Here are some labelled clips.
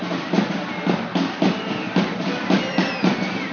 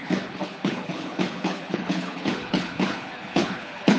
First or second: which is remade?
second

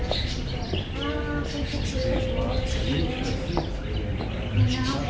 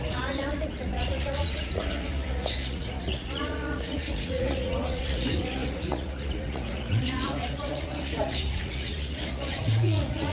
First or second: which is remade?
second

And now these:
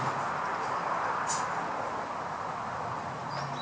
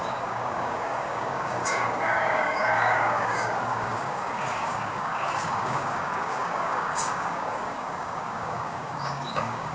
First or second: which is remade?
second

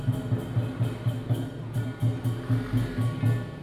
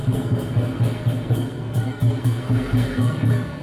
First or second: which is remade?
second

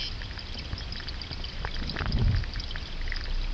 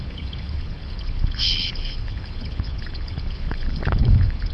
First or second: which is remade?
second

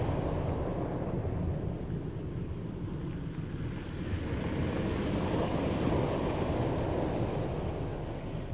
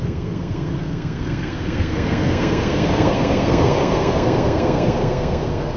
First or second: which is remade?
second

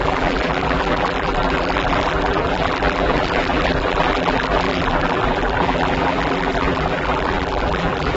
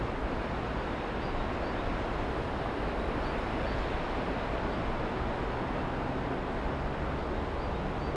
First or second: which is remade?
first